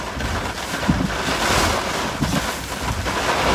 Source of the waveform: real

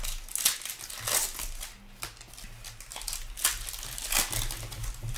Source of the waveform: real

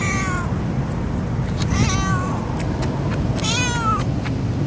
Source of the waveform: real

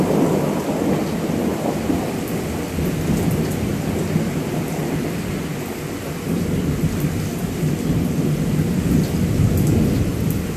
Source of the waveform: real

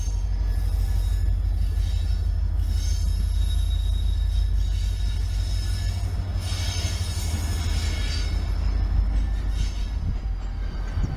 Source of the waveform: real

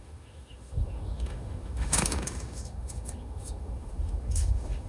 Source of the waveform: fake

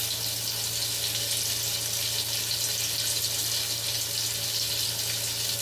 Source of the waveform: real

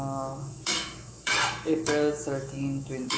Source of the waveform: fake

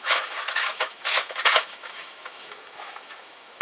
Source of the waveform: fake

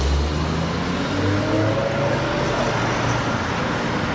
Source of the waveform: real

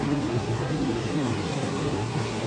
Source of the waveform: fake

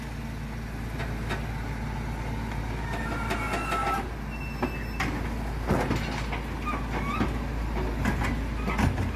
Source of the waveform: real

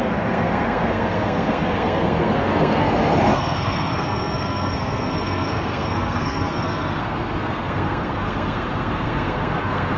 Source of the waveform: fake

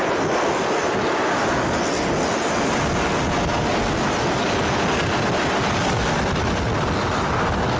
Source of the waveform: real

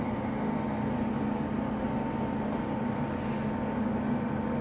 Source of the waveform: real